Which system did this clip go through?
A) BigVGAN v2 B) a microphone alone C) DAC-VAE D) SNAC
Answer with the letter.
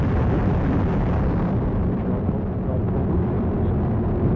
A